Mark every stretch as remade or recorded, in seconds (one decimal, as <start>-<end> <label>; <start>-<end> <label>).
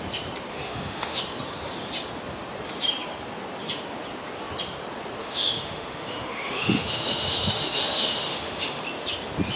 0.0-0.5 recorded; 0.5-1.2 remade; 1.2-5.2 recorded; 5.2-8.8 remade; 8.8-9.6 recorded